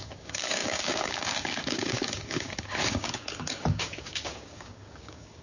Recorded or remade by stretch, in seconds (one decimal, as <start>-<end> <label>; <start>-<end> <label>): 0.0-5.4 remade